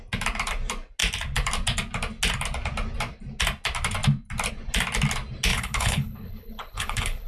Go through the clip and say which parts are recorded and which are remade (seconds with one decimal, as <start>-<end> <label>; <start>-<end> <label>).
0.0-5.5 recorded; 5.5-7.3 remade